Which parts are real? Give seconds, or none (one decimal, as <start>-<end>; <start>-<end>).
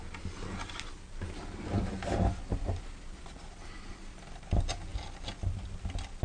0.0-6.2